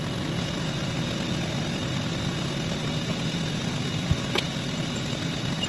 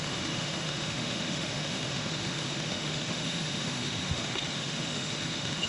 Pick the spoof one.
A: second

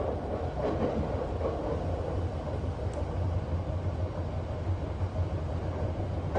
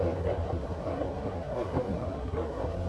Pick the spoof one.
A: second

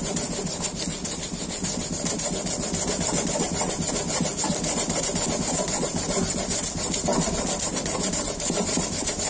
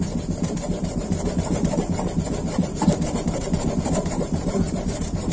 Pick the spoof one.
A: second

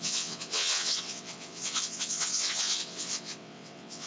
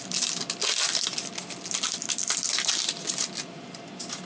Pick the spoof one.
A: first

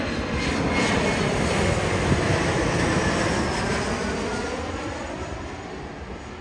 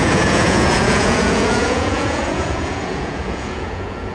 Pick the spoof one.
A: second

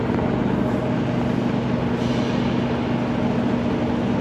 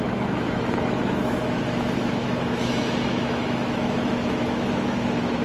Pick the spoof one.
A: second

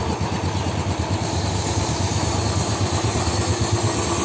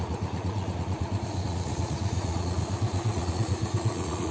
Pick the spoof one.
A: second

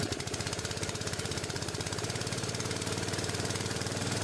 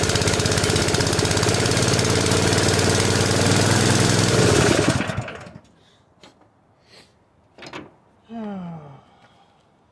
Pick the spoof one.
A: first